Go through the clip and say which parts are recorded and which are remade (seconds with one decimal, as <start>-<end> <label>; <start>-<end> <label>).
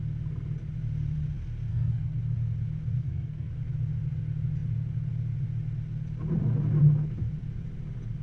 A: 0.0-1.7 recorded; 1.7-2.2 remade; 2.2-3.0 recorded; 3.0-3.5 remade; 3.5-8.2 recorded